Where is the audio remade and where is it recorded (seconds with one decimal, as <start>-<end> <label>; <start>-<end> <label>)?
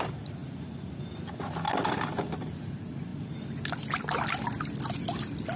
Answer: 0.0-5.6 recorded